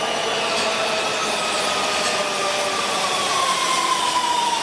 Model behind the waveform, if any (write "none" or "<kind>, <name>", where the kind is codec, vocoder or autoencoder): none